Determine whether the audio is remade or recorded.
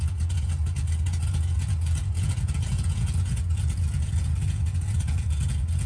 remade